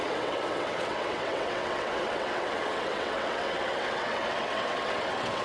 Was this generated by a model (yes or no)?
yes